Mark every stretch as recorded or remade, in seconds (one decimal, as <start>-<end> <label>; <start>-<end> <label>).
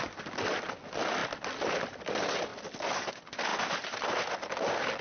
0.0-5.0 recorded